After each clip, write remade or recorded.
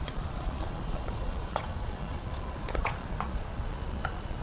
remade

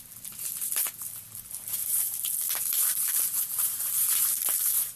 remade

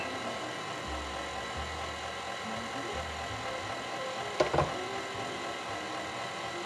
recorded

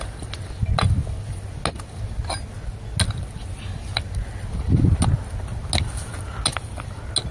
recorded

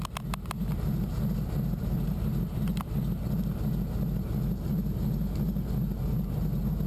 recorded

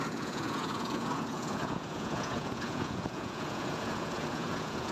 remade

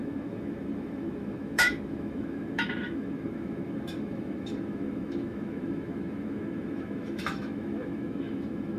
remade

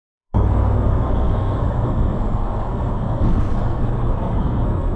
remade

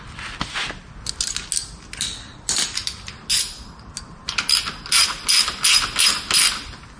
recorded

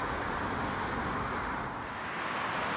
recorded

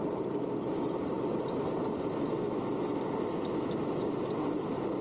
recorded